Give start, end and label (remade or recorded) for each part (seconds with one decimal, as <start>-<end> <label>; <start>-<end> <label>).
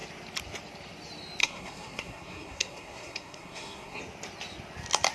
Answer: 0.0-1.4 recorded; 1.4-4.0 remade; 4.0-5.1 recorded